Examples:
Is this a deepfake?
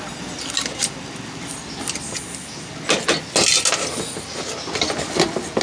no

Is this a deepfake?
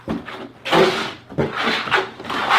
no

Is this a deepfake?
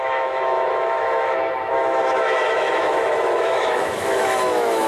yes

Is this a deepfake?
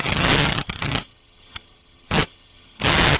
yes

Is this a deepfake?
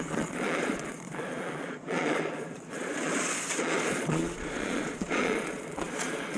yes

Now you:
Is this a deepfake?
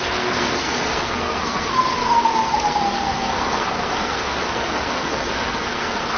yes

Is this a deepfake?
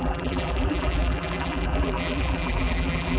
yes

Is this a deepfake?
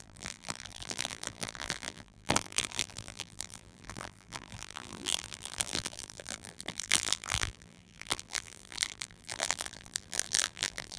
yes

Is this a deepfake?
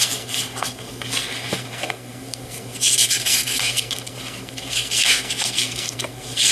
yes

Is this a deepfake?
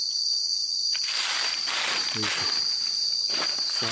no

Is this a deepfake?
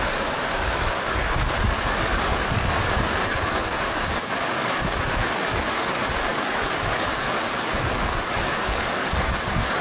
yes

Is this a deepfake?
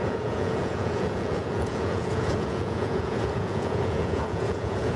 yes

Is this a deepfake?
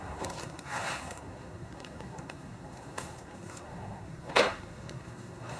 yes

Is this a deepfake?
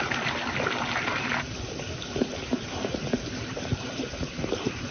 no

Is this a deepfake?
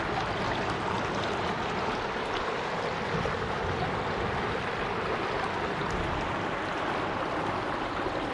no